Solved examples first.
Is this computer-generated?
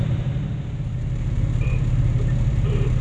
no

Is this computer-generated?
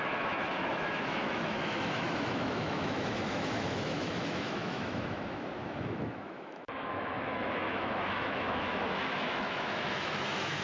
yes